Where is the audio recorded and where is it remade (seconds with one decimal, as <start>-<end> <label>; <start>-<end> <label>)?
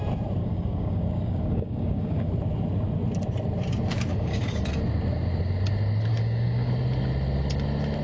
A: 0.0-0.4 recorded; 0.4-2.3 remade; 2.3-4.1 recorded; 4.1-4.7 remade; 4.7-6.1 recorded; 6.1-6.7 remade; 6.7-8.0 recorded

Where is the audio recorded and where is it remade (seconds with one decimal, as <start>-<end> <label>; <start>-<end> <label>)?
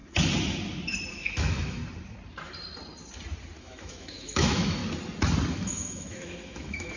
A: 0.0-1.1 recorded; 1.1-1.8 remade; 1.8-3.6 recorded; 3.6-4.8 remade; 4.8-5.5 recorded; 5.5-7.0 remade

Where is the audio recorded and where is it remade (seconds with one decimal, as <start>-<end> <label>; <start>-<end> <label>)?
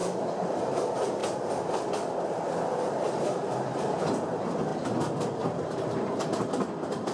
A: 0.0-0.6 remade; 0.6-7.1 recorded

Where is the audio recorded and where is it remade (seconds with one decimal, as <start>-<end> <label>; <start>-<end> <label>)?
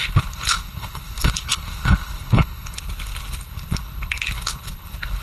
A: 0.0-5.2 remade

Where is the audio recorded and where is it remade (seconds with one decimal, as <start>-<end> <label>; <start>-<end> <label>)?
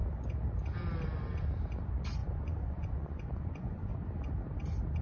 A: 0.0-2.2 recorded; 2.2-3.9 remade; 3.9-5.0 recorded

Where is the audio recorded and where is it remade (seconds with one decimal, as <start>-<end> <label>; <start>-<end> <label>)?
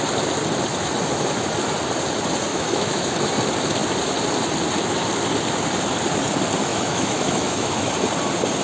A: 0.0-2.5 recorded; 2.5-3.1 remade; 3.1-6.7 recorded; 6.7-7.9 remade; 7.9-8.6 recorded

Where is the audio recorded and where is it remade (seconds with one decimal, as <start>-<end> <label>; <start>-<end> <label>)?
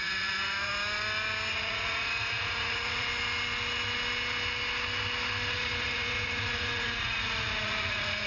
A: 0.0-0.7 remade; 0.7-1.5 recorded; 1.5-3.1 remade; 3.1-5.5 recorded; 5.5-8.3 remade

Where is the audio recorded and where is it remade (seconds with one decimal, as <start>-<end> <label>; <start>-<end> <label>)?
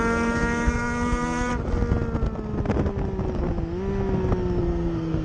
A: 0.0-1.5 remade; 1.5-4.6 recorded; 4.6-5.2 remade